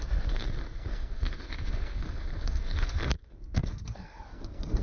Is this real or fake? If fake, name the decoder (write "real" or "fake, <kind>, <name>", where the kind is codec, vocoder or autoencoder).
fake, codec, SNAC